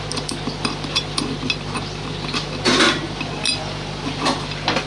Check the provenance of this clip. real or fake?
fake